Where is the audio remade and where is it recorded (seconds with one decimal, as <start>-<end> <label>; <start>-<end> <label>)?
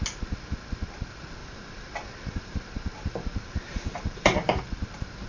0.0-1.4 recorded; 1.4-4.6 remade; 4.6-5.3 recorded